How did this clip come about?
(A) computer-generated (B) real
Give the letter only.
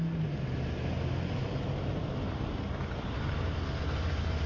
B